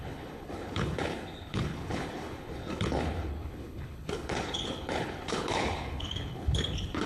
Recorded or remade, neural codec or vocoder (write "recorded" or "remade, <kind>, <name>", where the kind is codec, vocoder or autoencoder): remade, codec, HILCodec